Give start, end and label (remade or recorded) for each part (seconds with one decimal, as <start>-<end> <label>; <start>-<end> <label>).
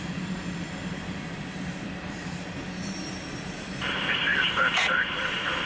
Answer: 0.0-5.7 remade